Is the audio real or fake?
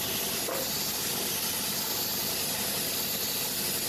real